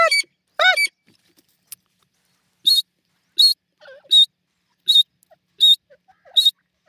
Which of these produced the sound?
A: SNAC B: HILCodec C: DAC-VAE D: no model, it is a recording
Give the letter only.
D